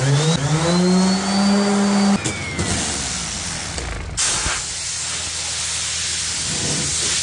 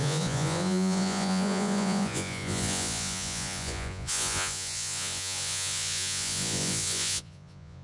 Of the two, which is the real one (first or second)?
first